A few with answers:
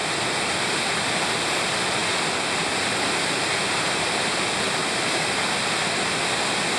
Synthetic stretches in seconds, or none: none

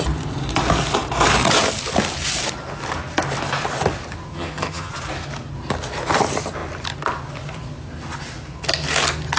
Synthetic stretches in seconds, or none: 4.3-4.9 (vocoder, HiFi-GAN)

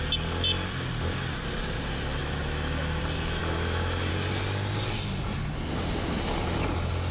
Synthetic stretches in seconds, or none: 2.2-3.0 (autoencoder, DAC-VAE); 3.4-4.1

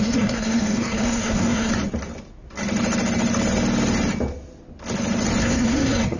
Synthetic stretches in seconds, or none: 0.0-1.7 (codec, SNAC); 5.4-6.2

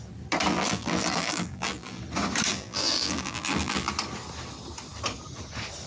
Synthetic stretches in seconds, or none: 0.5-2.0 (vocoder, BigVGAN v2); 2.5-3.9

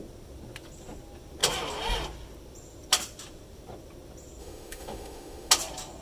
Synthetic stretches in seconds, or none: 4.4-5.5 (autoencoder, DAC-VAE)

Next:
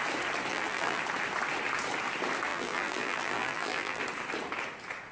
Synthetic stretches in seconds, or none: 0.5-1.0 (vocoder, BigVGAN v2); 2.5-4.0